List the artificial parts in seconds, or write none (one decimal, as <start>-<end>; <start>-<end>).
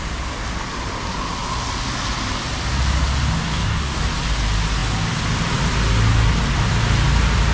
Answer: 3.5-4.0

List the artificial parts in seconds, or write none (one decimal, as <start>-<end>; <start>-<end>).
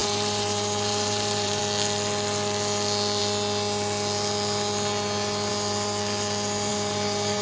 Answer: 0.0-1.6; 6.7-7.4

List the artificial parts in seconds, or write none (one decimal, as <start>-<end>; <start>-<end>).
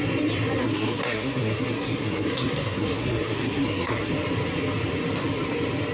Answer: 0.6-4.1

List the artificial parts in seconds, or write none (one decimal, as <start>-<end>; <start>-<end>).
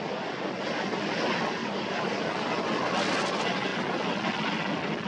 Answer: 1.6-2.2